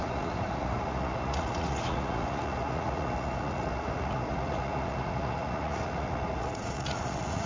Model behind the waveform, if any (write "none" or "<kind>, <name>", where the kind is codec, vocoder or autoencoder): vocoder, Vocos